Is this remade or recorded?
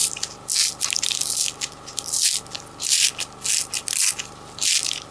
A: recorded